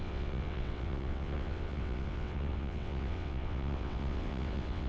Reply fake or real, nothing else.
fake